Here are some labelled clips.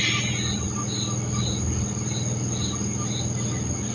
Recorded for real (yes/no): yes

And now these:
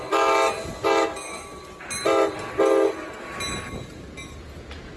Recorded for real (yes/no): yes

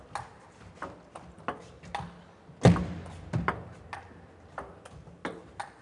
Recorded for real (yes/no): yes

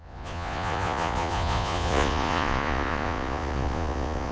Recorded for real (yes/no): no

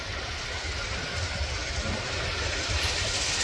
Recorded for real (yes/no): yes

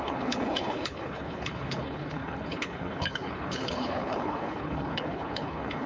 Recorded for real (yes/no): no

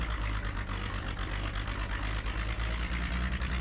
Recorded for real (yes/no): yes